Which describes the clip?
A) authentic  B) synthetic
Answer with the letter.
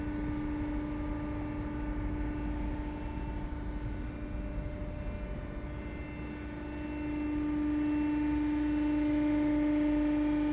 A